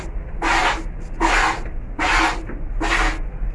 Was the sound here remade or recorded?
recorded